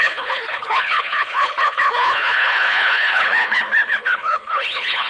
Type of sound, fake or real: fake